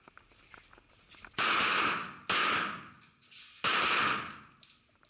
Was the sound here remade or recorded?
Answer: recorded